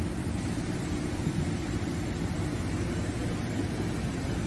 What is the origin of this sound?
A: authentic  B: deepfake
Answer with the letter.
A